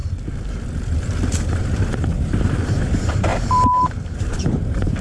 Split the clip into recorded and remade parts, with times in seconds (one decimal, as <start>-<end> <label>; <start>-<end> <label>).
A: 0.0-1.3 recorded; 1.3-5.0 remade